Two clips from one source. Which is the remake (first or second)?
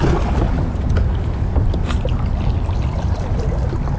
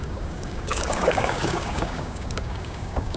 second